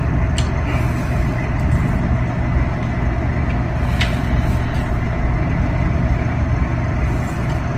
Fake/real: real